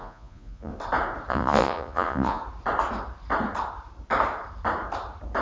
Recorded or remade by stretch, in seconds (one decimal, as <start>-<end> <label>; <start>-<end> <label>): 0.0-0.7 remade; 0.7-1.3 recorded; 1.3-2.4 remade; 2.4-5.4 recorded